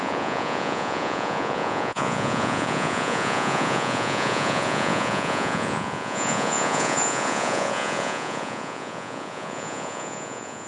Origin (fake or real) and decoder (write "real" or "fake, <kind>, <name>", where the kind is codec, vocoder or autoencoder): fake, vocoder, Vocos